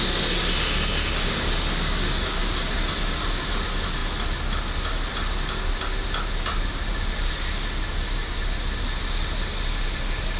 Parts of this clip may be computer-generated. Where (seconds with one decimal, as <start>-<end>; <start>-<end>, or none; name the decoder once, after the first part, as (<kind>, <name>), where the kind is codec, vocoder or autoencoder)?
1.0-2.4 (codec, DAC)